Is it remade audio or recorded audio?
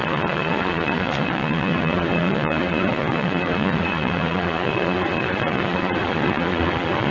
remade